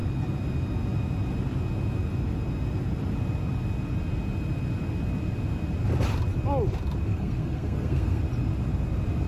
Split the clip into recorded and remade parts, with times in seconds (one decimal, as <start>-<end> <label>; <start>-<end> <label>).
0.0-7.1 recorded; 7.1-8.2 remade; 8.2-9.3 recorded